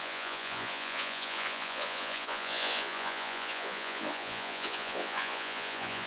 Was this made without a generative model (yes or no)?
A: no